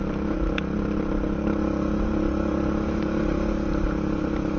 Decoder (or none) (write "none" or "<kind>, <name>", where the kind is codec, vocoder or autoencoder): none